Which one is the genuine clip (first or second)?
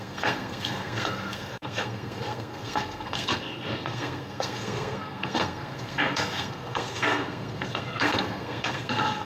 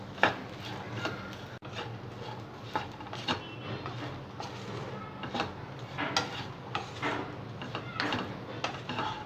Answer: second